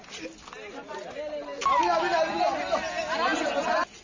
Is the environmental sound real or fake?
real